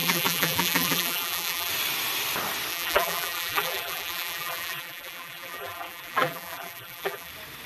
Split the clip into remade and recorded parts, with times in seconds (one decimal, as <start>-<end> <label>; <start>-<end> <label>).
0.0-1.7 remade; 1.7-2.7 recorded; 2.7-7.3 remade; 7.3-7.7 recorded